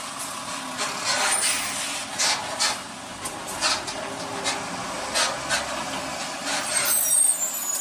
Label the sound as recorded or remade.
recorded